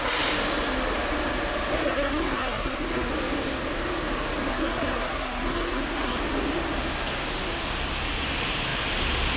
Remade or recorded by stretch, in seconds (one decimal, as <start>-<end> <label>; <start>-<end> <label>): 0.0-1.7 recorded; 1.7-3.1 remade; 3.1-4.5 recorded; 4.5-6.2 remade; 6.2-9.4 recorded